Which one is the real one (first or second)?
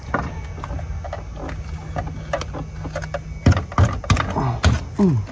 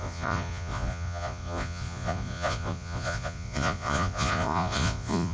first